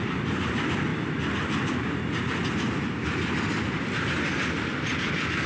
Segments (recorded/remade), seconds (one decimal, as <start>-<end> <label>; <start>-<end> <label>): 0.0-0.9 remade; 0.9-3.8 recorded; 3.8-5.5 remade